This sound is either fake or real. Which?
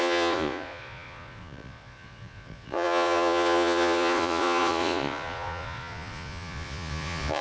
fake